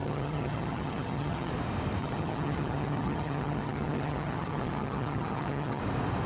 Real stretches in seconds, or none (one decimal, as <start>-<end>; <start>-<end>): 1.5-2.0; 5.8-6.3